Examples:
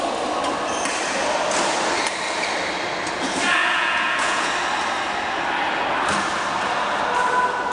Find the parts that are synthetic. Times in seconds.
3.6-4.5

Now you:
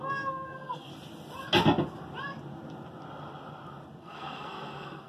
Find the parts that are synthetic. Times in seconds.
0.0-0.9; 4.0-5.1

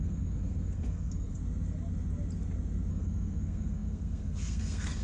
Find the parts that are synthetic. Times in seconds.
0.0-1.4; 2.9-5.0

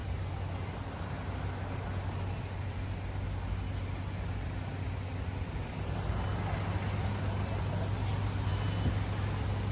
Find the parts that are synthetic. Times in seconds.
none

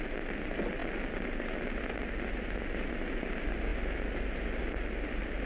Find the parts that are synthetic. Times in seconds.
none

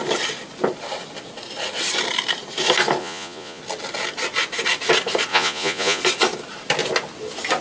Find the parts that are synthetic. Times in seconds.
3.0-3.6; 5.3-6.0

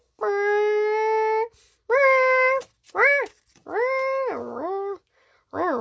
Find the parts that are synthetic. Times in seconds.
none

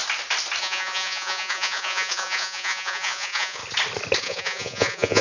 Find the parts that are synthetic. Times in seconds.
0.6-3.6; 4.2-5.2